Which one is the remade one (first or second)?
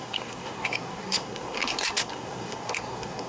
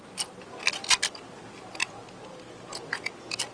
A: first